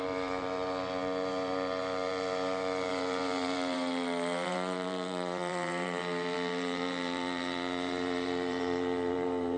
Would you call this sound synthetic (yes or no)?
yes